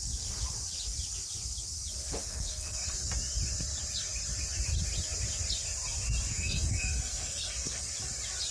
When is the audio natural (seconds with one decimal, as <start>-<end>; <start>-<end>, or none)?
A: 0.0-2.2; 3.1-6.3; 7.9-8.5